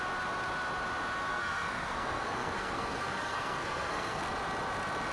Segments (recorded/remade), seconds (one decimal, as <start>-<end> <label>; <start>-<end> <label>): 0.0-1.3 recorded; 1.3-4.2 remade; 4.2-5.1 recorded